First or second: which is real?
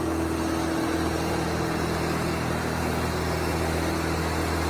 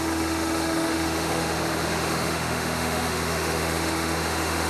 first